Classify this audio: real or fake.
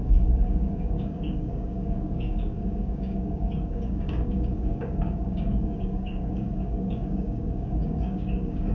fake